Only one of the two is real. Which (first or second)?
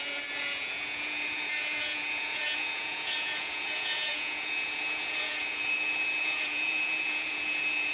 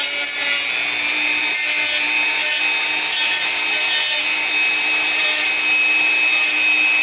second